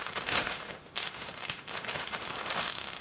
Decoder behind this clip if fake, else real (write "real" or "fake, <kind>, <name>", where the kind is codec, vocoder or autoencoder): fake, autoencoder, DAC-VAE